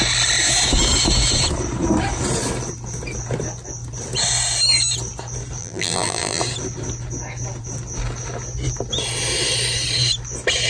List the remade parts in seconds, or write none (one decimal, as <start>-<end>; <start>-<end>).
5.6-6.4